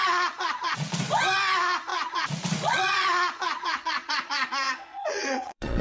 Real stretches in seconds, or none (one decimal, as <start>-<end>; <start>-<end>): 1.0-1.9